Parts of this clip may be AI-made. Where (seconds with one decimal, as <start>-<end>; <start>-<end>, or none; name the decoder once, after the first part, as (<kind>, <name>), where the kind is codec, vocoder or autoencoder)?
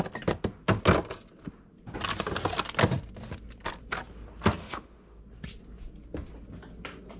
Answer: 4.6-5.2 (autoencoder, DAC-VAE)